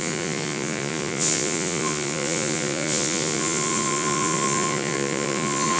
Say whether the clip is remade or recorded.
remade